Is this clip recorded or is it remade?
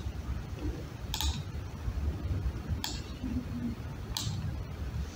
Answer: recorded